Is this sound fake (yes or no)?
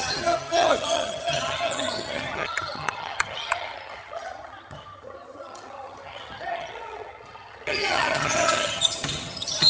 yes